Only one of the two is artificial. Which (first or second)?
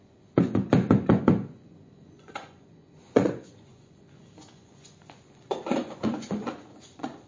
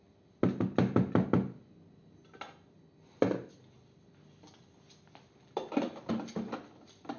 first